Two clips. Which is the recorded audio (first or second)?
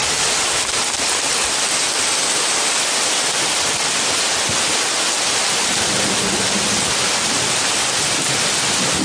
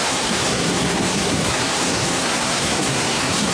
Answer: first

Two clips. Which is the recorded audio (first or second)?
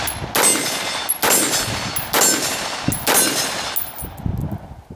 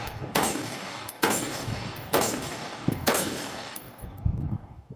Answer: first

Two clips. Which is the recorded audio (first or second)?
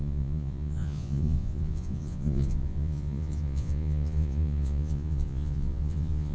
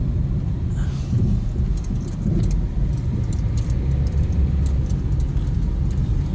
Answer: second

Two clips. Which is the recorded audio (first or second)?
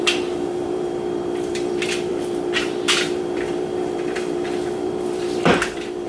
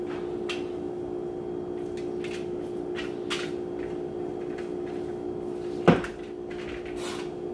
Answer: second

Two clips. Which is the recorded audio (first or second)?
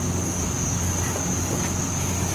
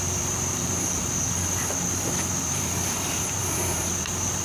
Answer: first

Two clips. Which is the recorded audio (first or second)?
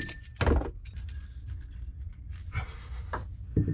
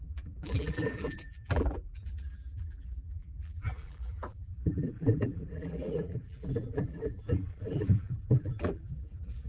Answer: first